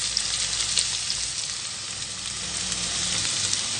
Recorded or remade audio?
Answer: recorded